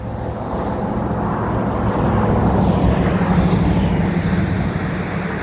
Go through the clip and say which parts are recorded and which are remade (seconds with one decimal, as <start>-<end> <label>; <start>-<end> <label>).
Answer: 0.0-5.4 recorded